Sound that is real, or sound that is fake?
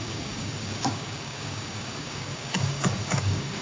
fake